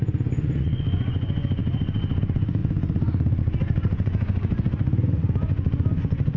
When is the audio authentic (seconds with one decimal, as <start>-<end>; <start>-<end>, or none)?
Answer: 1.6-2.2